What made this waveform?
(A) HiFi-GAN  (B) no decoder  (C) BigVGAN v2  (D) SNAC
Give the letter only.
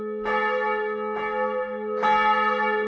B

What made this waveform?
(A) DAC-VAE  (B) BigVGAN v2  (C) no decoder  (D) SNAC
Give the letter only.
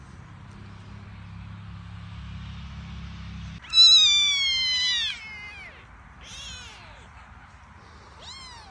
C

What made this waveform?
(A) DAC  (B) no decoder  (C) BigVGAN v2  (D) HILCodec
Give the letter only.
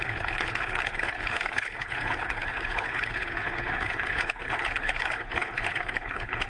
D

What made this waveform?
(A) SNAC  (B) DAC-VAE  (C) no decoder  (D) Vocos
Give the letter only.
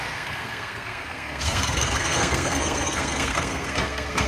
A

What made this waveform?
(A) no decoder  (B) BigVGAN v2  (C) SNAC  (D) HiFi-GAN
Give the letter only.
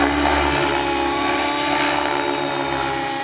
A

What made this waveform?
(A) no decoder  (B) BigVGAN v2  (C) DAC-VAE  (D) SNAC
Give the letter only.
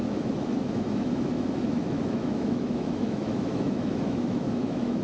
C